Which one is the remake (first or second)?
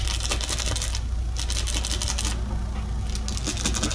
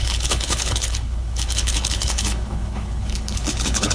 second